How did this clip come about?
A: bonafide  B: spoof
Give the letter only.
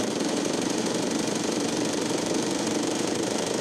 B